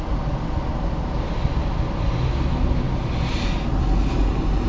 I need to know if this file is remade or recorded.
recorded